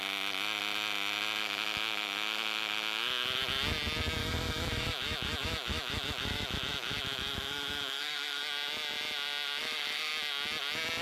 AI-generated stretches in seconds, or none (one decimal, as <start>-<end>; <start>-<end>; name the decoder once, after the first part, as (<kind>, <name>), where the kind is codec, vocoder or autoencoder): 1.4-3.4 (autoencoder, DAC-VAE); 4.2-8.4; 9.6-10.1